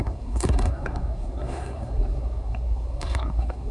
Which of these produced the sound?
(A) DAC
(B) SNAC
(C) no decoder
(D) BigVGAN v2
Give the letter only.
B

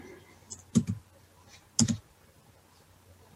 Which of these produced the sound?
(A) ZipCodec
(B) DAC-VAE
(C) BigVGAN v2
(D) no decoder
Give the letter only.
D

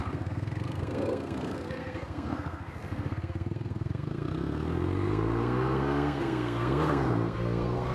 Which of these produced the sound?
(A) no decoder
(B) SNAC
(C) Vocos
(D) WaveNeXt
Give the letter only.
B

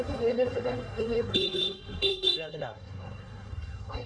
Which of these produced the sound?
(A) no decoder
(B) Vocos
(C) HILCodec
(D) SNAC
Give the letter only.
D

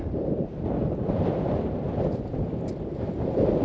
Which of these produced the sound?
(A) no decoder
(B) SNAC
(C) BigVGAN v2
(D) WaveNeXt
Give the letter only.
A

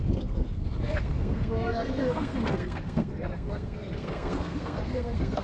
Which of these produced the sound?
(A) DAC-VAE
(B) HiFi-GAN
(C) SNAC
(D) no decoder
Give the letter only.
C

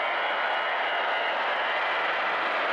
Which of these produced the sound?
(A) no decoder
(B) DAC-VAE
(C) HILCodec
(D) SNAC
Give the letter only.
A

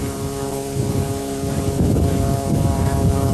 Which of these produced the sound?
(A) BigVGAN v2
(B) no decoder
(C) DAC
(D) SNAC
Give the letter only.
C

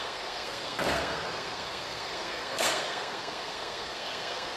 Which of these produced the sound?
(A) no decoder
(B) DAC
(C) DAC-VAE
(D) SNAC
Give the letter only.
D